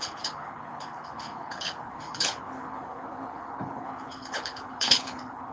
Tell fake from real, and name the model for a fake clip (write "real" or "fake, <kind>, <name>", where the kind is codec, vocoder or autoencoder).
fake, codec, HILCodec